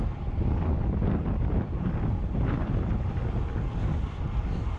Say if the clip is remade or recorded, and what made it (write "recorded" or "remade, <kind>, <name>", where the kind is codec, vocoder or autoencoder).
recorded